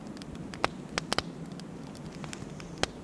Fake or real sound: real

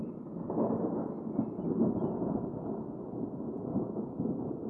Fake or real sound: real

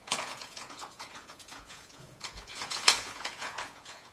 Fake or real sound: fake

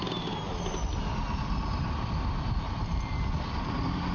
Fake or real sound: real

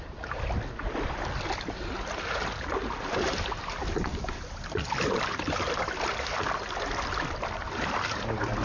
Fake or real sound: real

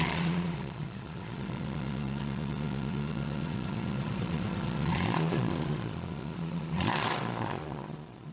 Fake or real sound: fake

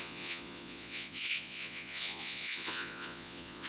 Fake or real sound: fake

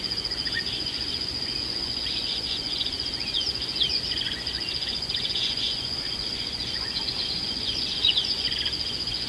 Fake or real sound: fake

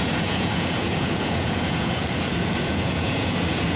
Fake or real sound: fake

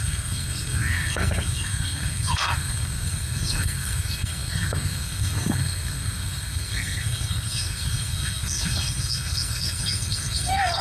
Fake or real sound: fake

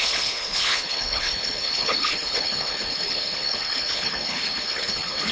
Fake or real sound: fake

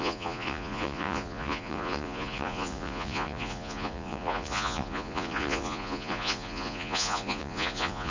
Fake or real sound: fake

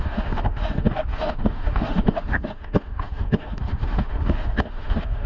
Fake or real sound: fake